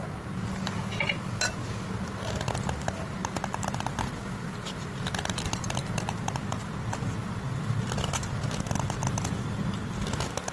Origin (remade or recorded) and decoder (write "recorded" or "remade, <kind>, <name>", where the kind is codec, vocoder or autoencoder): recorded